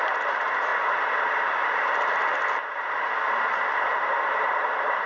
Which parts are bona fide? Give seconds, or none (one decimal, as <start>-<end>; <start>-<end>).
0.7-3.8